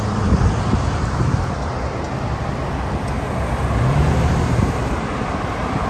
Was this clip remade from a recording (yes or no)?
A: no